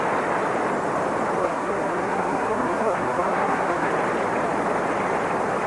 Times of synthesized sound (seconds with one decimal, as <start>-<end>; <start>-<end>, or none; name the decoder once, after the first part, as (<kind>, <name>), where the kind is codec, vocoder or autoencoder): 1.4-3.9 (codec, SNAC)